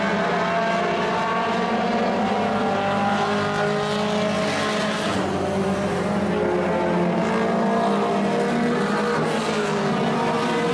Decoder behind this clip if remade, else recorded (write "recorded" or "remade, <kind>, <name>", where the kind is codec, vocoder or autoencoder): recorded